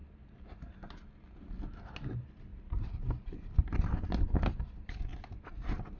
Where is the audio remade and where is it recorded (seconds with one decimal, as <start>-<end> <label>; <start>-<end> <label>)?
0.0-2.5 recorded; 2.5-3.9 remade; 3.9-5.1 recorded; 5.1-6.0 remade